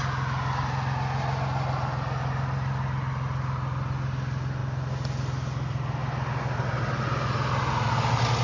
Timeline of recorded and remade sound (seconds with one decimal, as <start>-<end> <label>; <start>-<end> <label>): 0.0-8.4 recorded